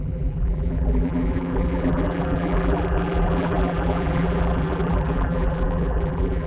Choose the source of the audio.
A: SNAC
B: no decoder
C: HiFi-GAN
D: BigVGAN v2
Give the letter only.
D